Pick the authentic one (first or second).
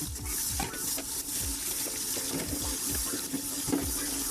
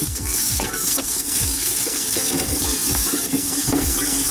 first